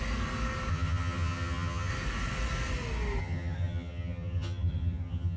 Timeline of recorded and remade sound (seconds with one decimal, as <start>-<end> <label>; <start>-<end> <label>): 0.0-0.7 recorded; 0.7-1.9 remade; 1.9-3.2 recorded; 3.2-5.4 remade